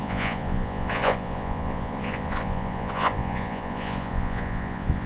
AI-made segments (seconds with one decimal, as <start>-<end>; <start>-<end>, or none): 0.0-5.1